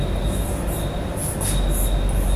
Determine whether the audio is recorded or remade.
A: recorded